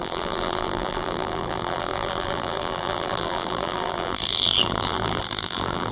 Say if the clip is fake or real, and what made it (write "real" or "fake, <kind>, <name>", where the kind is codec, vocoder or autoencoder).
fake, vocoder, BigVGAN v2